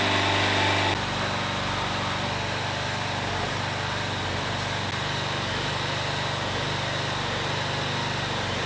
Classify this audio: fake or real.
real